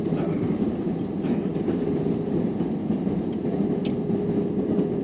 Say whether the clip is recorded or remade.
remade